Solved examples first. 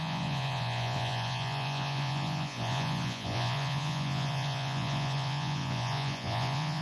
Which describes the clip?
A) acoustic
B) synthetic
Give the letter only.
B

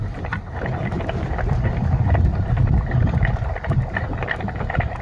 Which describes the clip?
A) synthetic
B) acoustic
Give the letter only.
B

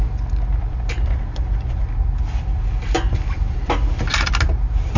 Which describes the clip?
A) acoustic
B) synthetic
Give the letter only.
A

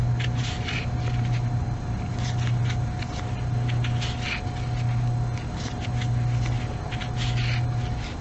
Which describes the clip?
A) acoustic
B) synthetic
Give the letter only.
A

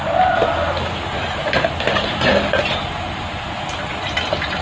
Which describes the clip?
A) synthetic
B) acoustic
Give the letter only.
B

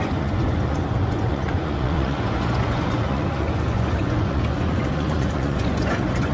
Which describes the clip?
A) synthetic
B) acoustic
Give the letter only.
A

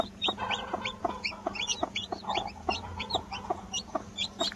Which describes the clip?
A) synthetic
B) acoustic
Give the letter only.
A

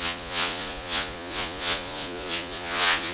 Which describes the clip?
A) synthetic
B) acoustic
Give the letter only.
A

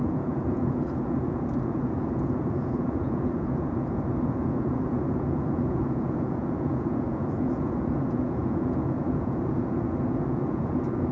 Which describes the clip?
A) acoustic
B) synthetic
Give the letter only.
B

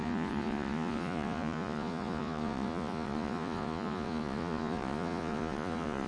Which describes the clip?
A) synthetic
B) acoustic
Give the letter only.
A